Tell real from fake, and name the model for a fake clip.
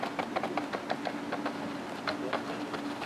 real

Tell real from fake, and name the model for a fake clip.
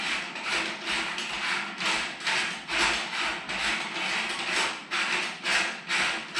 real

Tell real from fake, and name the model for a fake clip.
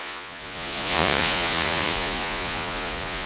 fake, vocoder, Vocos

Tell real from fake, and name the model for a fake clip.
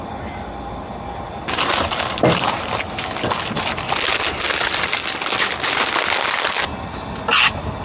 real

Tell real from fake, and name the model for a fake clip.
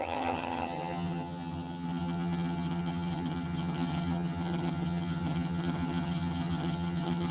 fake, vocoder, HiFi-GAN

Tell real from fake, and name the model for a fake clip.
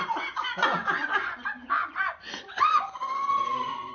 fake, vocoder, Vocos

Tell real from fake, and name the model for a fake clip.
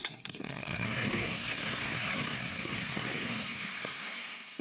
fake, codec, SNAC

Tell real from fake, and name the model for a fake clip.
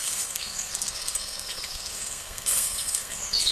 fake, codec, SNAC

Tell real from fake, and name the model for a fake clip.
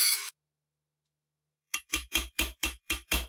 fake, autoencoder, DAC-VAE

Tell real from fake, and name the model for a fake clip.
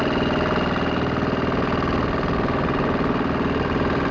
real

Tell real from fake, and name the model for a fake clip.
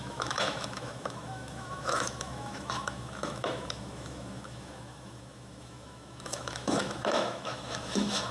fake, autoencoder, DAC-VAE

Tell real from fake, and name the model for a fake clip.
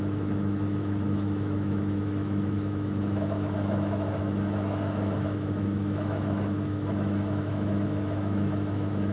fake, autoencoder, DAC-VAE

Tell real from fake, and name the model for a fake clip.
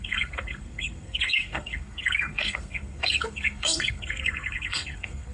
fake, codec, SNAC